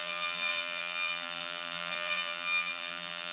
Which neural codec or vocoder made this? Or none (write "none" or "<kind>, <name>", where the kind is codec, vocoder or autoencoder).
vocoder, BigVGAN v2